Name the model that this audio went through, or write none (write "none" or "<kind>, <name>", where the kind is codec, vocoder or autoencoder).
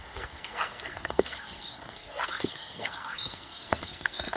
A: codec, SNAC